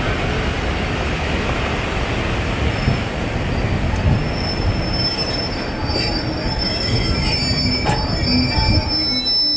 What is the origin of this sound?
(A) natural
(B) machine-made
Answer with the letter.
A